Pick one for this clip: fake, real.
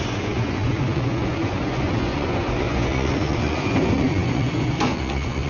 fake